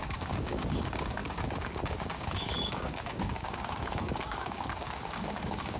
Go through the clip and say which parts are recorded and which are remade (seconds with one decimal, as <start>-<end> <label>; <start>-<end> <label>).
0.0-5.8 remade